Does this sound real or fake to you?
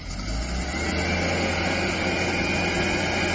real